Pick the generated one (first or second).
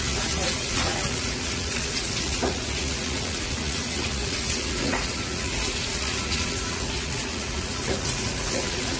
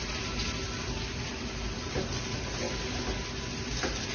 first